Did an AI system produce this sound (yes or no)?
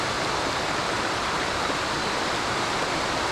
no